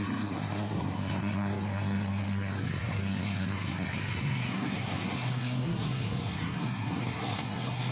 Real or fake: fake